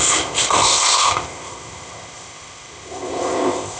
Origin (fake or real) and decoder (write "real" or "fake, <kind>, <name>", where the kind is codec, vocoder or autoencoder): fake, codec, ZipCodec